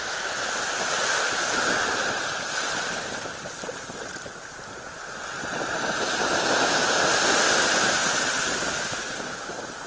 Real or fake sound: real